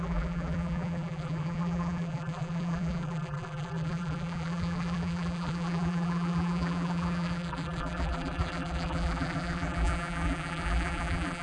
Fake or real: fake